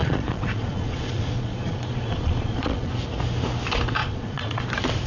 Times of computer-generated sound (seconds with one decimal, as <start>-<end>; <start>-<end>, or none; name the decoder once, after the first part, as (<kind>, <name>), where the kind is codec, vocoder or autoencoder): 0.0-2.9 (vocoder, Vocos); 4.0-4.6